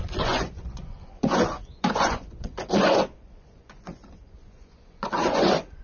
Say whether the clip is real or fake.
fake